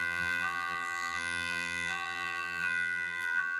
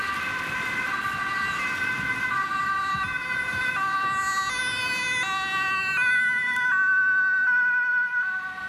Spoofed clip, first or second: first